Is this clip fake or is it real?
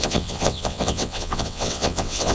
fake